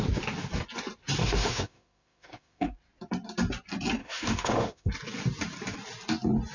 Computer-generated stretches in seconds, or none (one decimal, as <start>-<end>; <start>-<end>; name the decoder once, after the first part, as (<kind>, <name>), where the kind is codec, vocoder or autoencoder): 1.2-2.7 (autoencoder, DAC-VAE); 4.0-4.9